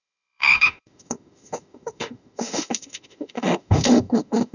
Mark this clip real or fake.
fake